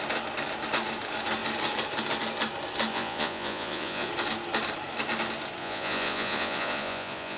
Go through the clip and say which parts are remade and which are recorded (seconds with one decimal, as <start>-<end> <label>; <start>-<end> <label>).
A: 0.0-2.9 recorded; 2.9-4.1 remade; 4.1-5.6 recorded; 5.6-7.4 remade